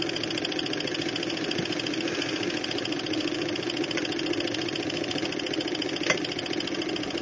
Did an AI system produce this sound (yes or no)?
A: no